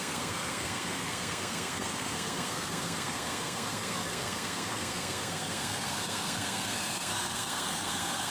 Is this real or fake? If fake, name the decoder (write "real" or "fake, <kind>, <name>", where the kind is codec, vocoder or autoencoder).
fake, codec, SNAC